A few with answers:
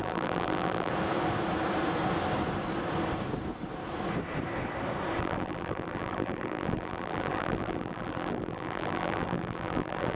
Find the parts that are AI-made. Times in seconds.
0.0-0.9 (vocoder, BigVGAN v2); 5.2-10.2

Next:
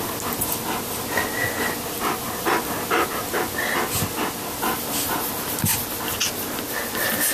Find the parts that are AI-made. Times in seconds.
none

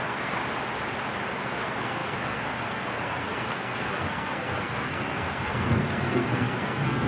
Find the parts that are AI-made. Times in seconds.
0.0-0.4 (codec, SNAC); 1.3-7.1

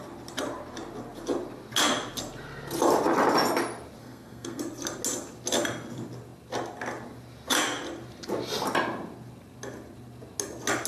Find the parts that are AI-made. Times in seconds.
4.0-4.6 (codec, SNAC)

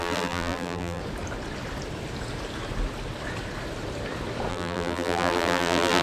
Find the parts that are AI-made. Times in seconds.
0.0-1.0 (vocoder, BigVGAN v2); 4.5-6.0

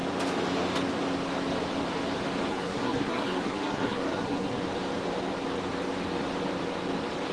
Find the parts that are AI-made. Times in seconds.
2.5-4.6 (codec, SNAC)